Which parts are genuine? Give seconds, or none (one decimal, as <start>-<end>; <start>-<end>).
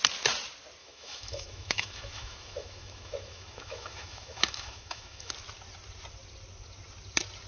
0.0-0.8; 5.3-7.5